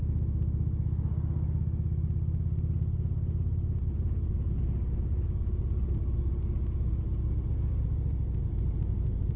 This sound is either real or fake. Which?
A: real